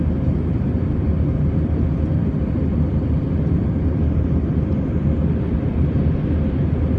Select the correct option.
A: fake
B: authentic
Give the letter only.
A